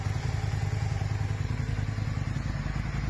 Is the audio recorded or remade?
recorded